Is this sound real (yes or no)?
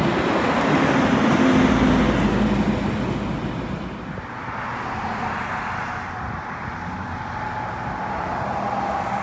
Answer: yes